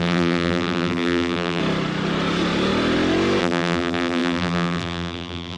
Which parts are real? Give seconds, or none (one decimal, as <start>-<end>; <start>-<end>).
1.6-3.4